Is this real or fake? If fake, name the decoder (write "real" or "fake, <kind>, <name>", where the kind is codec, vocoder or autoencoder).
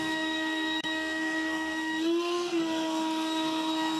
fake, codec, SNAC